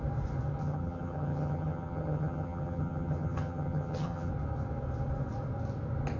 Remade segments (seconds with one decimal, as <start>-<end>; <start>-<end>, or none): 0.6-4.3